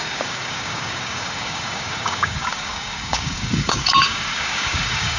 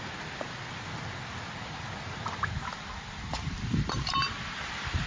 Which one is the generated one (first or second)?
first